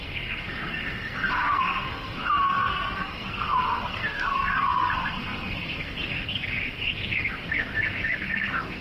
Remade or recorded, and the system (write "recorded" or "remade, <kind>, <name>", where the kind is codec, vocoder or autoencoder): remade, codec, SNAC